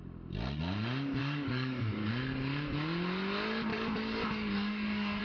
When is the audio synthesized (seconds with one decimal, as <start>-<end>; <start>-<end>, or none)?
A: 1.2-2.1; 3.7-5.2